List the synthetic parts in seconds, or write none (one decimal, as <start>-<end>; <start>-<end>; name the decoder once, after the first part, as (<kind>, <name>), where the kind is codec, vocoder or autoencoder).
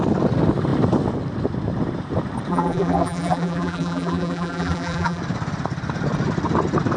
2.5-5.2 (vocoder, BigVGAN v2)